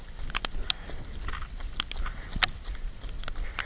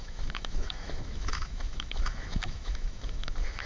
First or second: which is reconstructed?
second